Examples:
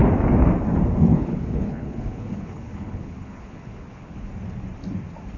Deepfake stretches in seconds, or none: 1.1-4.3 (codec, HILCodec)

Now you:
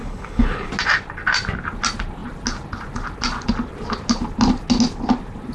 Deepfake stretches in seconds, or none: 0.0-0.7 (codec, HILCodec)

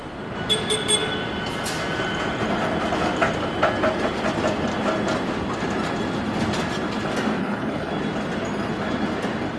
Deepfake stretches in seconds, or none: 7.4-7.9 (codec, HILCodec)

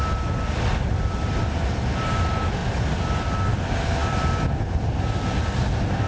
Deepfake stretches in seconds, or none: none